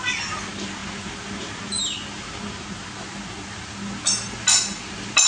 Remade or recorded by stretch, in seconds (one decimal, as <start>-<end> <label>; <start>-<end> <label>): 0.0-5.3 recorded